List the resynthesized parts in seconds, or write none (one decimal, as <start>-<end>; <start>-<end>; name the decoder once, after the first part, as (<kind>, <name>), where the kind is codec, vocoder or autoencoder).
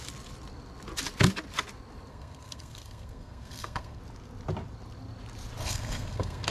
2.1-4.0 (codec, SNAC); 5.6-6.5